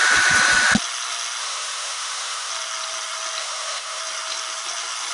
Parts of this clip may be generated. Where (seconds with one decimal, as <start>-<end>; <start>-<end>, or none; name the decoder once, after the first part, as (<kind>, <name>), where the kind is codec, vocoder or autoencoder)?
1.4-2.5 (autoencoder, DAC-VAE); 3.4-4.0